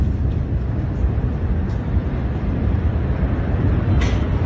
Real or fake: real